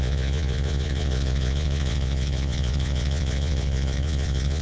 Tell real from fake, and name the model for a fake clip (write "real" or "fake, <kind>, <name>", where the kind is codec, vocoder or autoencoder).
fake, vocoder, Vocos